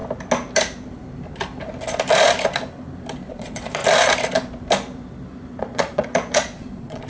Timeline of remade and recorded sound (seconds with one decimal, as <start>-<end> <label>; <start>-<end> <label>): 0.0-3.3 recorded; 3.3-3.8 remade; 3.8-5.6 recorded; 5.6-7.1 remade